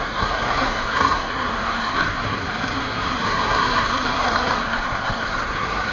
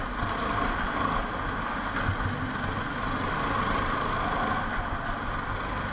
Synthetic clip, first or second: first